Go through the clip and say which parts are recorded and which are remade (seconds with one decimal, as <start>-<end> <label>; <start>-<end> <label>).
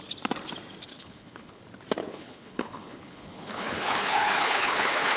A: 0.0-0.9 recorded; 0.9-1.6 remade; 1.6-2.0 recorded; 2.0-5.2 remade